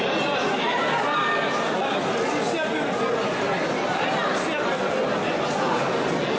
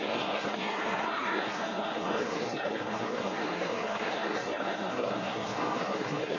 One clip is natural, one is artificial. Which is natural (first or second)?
first